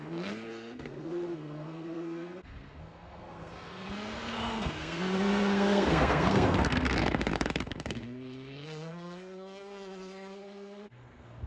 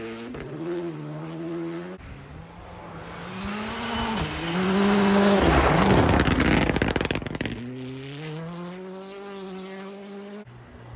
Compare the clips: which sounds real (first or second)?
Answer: second